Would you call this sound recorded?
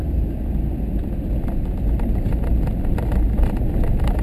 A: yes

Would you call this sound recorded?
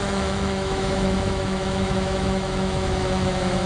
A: no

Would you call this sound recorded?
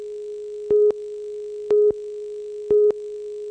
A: yes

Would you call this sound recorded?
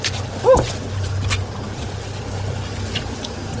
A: yes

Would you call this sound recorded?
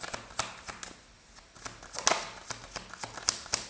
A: yes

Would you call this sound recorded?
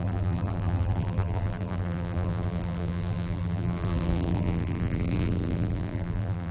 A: no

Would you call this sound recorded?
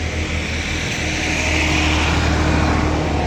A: yes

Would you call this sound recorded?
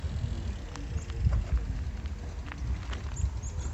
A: yes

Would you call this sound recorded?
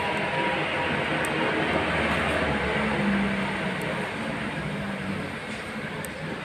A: yes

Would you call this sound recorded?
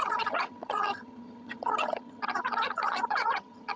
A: no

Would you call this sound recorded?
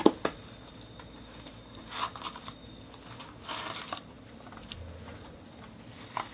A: yes